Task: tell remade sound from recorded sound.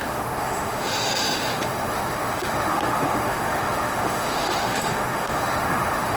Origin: remade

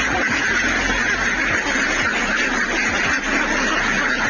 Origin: recorded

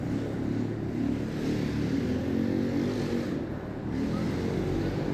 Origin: recorded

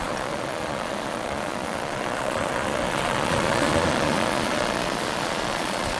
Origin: remade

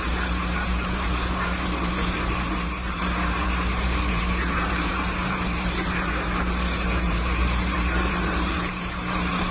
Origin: remade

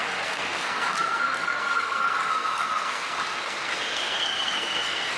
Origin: remade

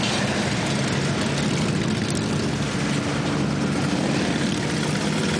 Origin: recorded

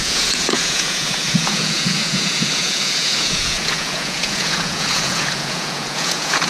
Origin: remade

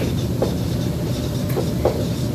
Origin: recorded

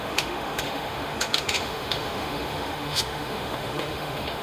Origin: remade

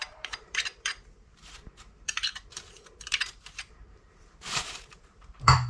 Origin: remade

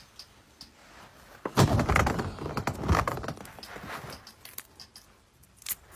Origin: recorded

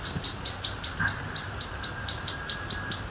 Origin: remade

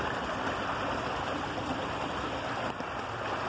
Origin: recorded